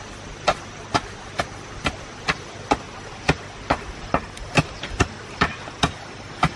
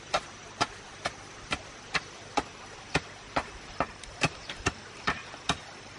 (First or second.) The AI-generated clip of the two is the second